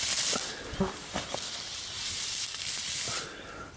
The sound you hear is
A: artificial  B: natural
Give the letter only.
B